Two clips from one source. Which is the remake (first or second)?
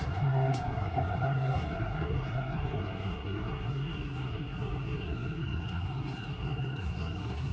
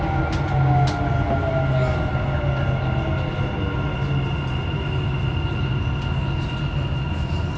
first